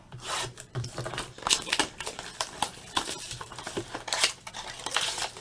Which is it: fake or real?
fake